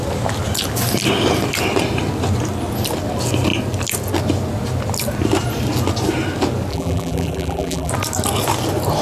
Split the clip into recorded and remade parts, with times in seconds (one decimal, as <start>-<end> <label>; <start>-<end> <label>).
0.0-6.7 recorded; 6.7-7.9 remade; 7.9-9.0 recorded